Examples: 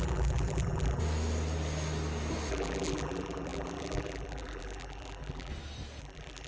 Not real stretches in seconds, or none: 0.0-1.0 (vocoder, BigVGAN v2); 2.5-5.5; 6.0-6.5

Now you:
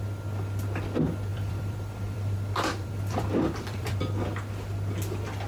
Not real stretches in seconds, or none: 1.3-4.0 (vocoder, BigVGAN v2)

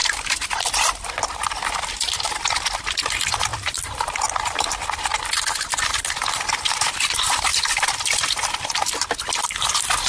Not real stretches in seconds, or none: 3.5-4.0 (vocoder, BigVGAN v2); 7.5-8.7

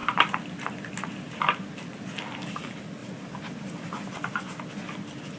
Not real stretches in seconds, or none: 0.0-1.4 (vocoder, BigVGAN v2); 3.0-4.9